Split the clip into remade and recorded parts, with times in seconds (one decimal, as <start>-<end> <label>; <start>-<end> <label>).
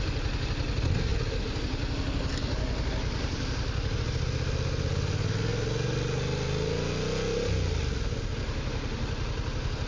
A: 0.0-9.9 recorded